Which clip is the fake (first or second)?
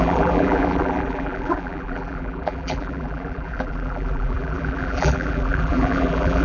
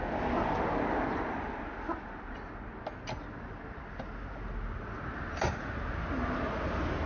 first